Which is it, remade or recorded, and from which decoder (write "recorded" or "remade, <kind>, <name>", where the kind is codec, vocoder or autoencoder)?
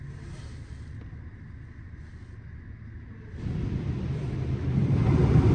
recorded